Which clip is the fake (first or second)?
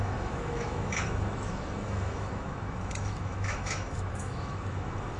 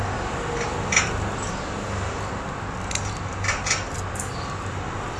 first